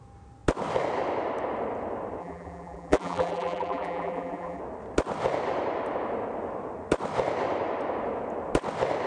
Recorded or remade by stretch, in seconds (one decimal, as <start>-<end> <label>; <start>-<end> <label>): 0.0-2.2 recorded; 2.2-4.6 remade; 4.6-9.1 recorded